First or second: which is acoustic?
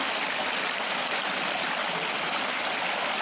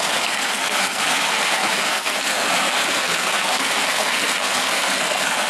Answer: first